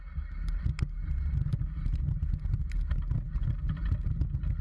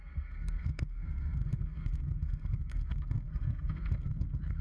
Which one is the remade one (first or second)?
second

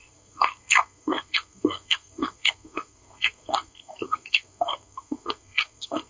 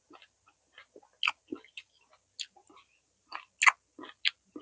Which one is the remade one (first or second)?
first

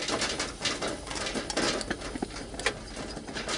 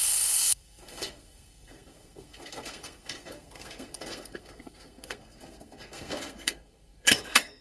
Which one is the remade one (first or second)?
second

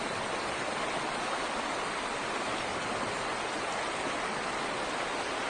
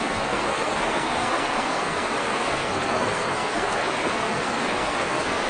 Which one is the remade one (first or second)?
second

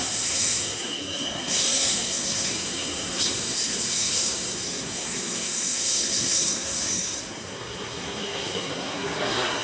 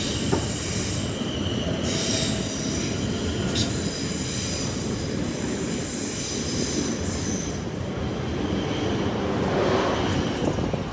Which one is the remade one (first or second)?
first